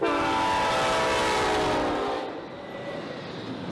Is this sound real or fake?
real